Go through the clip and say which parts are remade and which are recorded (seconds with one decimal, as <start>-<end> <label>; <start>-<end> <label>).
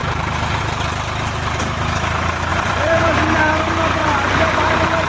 0.0-2.5 recorded; 2.5-3.2 remade; 3.2-4.0 recorded; 4.0-5.1 remade